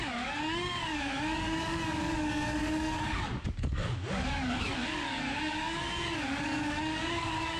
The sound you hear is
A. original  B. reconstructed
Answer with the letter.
B